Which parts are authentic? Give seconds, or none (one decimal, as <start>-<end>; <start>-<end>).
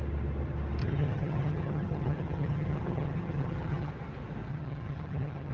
0.0-0.8; 3.9-4.5